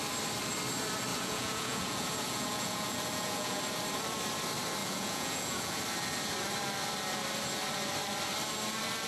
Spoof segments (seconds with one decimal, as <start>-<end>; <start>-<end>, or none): 1.1-3.6; 4.8-5.8